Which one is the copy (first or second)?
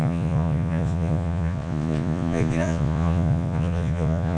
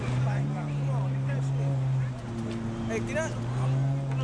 first